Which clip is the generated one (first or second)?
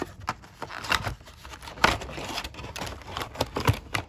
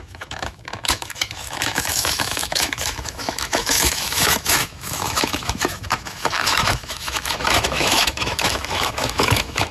second